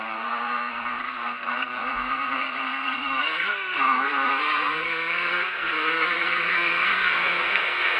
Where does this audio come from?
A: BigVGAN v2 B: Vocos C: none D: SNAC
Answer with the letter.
D